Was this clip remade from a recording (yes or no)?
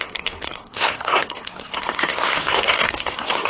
yes